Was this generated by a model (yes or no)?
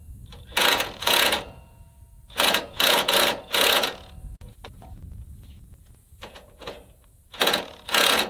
yes